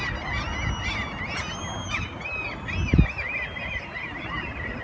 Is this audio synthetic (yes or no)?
no